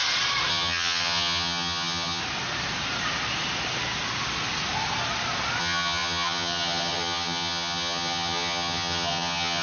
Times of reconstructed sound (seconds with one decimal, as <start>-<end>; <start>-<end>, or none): 0.5-2.2; 5.6-9.6